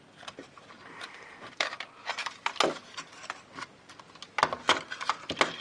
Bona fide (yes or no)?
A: yes